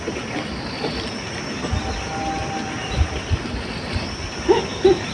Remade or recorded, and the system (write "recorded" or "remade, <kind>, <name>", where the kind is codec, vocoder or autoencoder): recorded